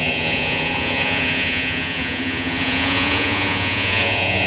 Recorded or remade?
remade